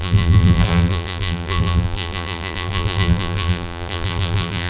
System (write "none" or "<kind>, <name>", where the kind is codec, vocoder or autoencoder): vocoder, BigVGAN v2